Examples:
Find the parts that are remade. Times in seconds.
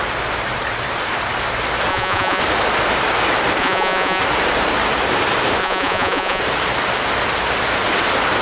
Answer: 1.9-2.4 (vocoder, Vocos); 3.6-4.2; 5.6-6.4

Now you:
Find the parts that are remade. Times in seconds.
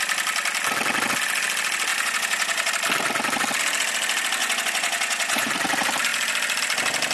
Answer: 1.9-2.7 (vocoder, Vocos); 4.4-5.5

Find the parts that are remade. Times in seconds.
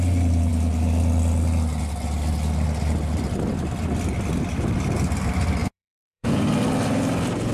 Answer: 5.6-6.4 (vocoder, Vocos)